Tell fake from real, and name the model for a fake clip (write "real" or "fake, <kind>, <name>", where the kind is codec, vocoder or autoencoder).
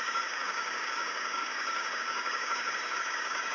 fake, codec, DAC